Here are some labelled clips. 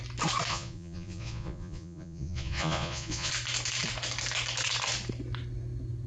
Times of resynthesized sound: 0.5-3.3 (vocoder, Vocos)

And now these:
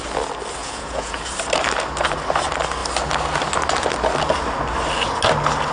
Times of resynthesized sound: 0.6-1.2 (vocoder, Vocos)

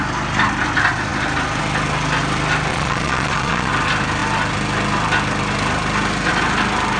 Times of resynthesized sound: 2.7-3.7 (vocoder, Vocos)

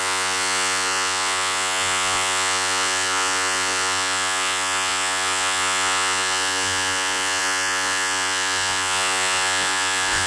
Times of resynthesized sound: 0.0-10.3 (vocoder, Vocos)

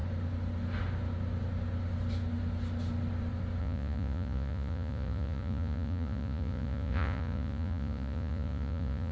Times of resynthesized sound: 3.6-9.1 (vocoder, Vocos)

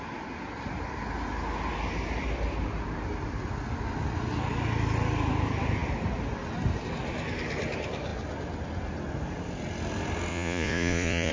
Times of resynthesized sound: 10.3-11.3 (vocoder, Vocos)

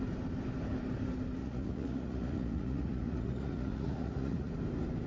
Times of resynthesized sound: 1.4-4.5 (vocoder, Vocos)

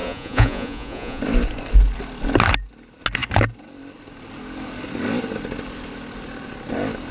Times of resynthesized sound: 0.0-1.2 (vocoder, Vocos)